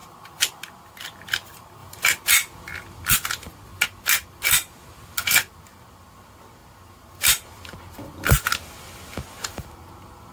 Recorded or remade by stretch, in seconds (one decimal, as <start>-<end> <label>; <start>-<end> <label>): 0.0-10.3 recorded